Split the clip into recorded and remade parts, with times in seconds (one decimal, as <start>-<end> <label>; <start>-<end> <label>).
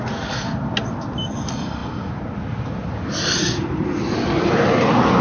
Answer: 0.0-5.2 recorded